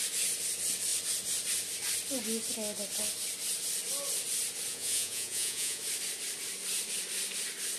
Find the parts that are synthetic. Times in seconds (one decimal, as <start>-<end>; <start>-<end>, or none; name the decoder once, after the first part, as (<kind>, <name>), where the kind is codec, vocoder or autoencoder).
4.7-5.8 (vocoder, Vocos)